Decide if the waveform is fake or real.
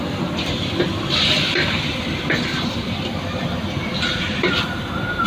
real